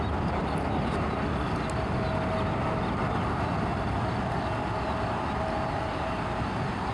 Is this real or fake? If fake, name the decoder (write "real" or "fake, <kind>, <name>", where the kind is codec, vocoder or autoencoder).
real